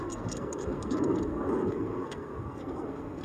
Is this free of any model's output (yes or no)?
no